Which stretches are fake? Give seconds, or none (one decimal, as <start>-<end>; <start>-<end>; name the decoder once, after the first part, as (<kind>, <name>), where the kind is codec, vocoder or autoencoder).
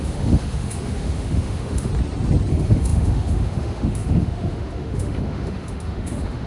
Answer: 0.0-1.9 (autoencoder, DAC-VAE); 2.5-6.5